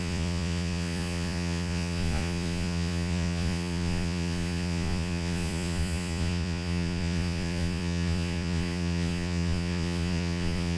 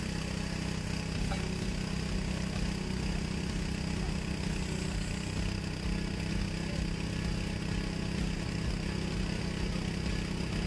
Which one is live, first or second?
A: second